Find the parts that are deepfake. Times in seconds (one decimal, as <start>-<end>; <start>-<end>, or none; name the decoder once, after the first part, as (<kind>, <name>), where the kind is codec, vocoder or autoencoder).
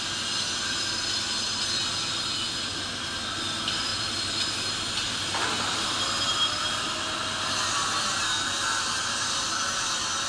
none